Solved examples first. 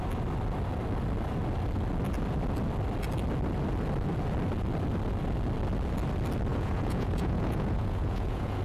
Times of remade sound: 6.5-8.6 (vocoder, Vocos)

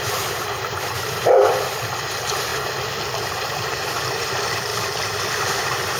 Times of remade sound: 0.0-1.4 (vocoder, BigVGAN v2); 2.1-2.5; 3.3-4.7; 5.6-6.0

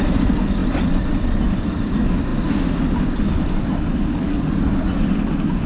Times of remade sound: none